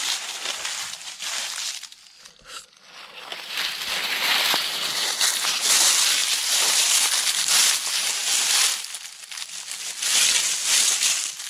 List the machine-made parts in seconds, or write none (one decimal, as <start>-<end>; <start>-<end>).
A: none